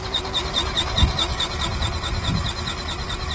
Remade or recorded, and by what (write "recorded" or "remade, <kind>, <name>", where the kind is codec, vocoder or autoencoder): recorded